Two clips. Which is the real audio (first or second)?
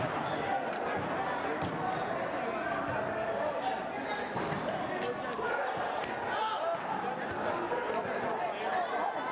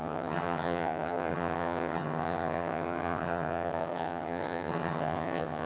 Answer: first